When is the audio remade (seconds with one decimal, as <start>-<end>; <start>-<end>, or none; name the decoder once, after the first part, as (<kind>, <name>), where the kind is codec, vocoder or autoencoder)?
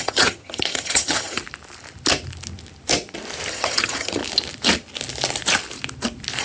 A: 0.0-1.4 (vocoder, HiFi-GAN); 3.5-4.2